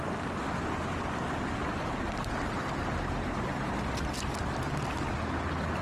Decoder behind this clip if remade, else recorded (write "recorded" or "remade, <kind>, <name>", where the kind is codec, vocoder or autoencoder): recorded